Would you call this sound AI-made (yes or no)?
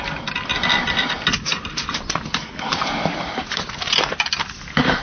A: no